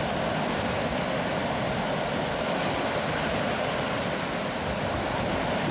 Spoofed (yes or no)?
no